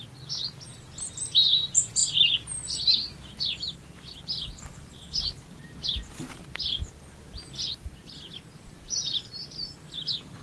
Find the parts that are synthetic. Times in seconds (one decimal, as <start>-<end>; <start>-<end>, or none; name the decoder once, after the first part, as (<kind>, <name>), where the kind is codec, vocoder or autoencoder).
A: none